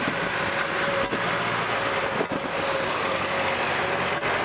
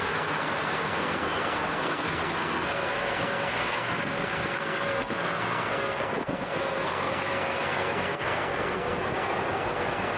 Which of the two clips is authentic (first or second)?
first